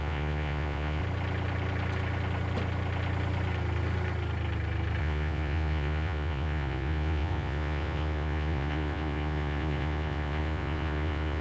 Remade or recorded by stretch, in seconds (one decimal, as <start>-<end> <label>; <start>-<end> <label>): 0.0-1.0 remade; 1.0-5.0 recorded; 5.0-11.4 remade